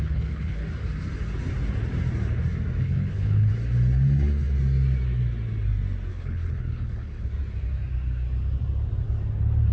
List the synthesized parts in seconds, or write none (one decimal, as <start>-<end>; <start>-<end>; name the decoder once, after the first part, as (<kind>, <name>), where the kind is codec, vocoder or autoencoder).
0.0-0.6 (codec, HILCodec); 2.8-3.5; 6.1-7.3